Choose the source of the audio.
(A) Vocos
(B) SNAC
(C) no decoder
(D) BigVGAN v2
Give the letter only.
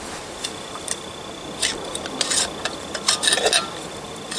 C